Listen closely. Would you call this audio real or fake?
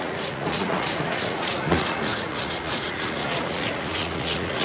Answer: fake